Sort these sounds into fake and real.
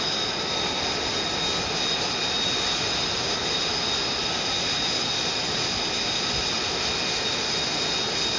real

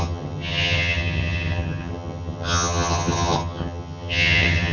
fake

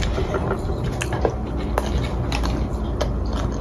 real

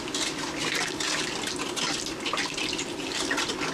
real